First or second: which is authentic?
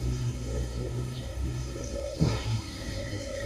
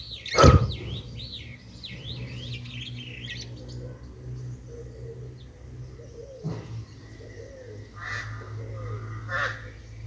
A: second